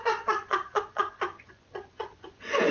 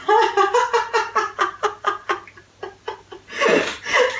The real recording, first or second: second